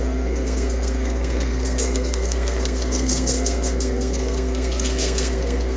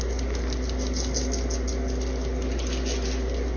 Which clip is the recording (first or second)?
second